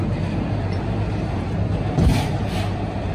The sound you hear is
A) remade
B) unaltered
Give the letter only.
A